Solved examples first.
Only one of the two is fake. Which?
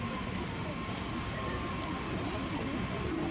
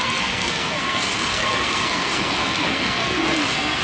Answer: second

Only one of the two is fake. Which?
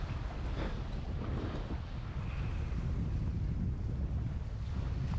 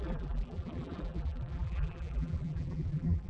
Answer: second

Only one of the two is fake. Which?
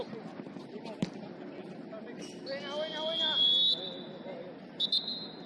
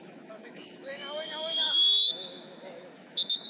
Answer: second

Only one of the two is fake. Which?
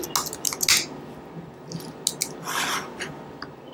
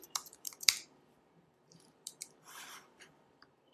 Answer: second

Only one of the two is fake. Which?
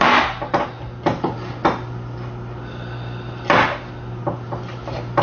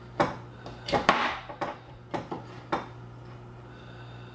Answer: second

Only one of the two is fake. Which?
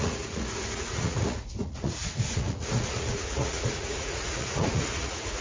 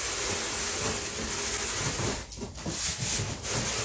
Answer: first